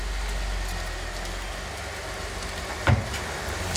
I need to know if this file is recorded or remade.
recorded